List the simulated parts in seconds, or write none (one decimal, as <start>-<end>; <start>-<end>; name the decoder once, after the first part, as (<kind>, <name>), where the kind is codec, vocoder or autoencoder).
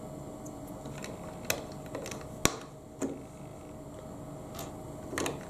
none